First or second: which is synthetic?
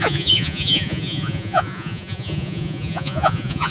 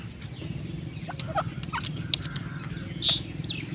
first